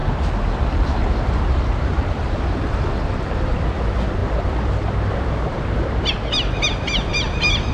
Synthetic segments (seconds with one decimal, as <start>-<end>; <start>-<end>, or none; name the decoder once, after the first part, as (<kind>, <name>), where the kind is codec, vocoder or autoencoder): 3.2-7.7 (vocoder, BigVGAN v2)